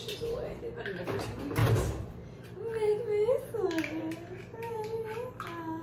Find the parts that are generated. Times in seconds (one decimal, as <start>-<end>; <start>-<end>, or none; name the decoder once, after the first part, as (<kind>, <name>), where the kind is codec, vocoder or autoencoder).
none